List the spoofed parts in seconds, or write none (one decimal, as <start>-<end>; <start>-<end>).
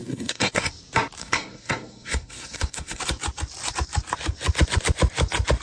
0.0-0.7; 1.2-3.0